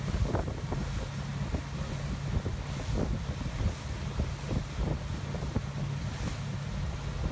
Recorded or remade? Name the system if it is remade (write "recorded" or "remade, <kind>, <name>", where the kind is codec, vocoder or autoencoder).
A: recorded